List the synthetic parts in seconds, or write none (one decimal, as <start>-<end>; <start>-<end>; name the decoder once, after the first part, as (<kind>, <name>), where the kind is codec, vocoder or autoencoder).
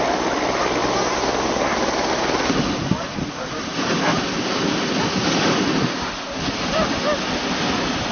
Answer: none